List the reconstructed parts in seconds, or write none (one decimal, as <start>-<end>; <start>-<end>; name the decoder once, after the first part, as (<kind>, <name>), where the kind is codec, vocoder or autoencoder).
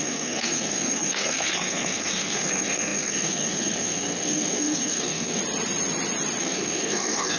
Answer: 0.0-5.4 (codec, SNAC); 6.4-7.4